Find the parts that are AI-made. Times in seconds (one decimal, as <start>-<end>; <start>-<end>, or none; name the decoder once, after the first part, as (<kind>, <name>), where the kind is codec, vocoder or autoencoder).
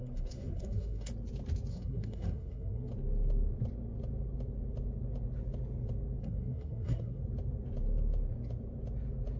0.0-1.1 (codec, SNAC); 1.7-2.9; 6.2-7.2